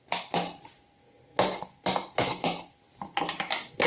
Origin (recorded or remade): recorded